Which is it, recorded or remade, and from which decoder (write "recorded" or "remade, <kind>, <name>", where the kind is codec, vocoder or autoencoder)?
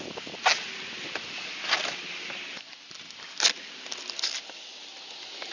recorded